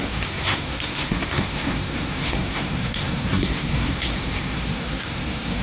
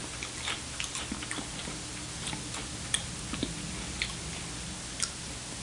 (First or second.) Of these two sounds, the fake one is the first